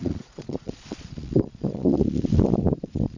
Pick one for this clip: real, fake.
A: fake